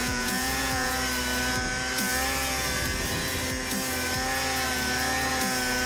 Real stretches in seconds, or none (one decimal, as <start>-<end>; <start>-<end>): 0.9-5.9